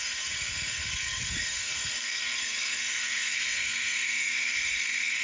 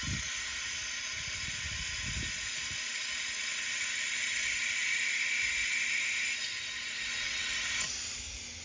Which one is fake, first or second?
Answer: first